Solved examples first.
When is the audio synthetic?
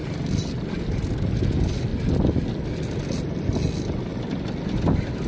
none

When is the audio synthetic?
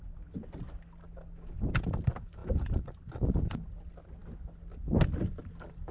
none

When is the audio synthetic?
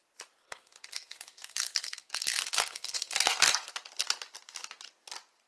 0.4-3.7 (codec, SNAC)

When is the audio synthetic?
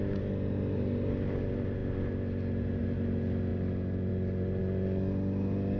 none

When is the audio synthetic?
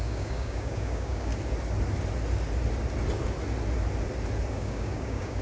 0.0-1.3 (codec, DAC); 4.5-5.4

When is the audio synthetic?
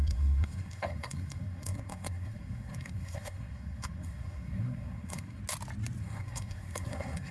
0.0-5.4 (codec, SNAC); 6.0-7.3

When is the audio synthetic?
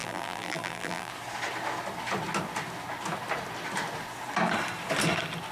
0.0-1.1 (vocoder, BigVGAN v2)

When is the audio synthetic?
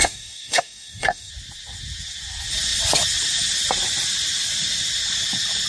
0.0-1.3 (codec, DAC)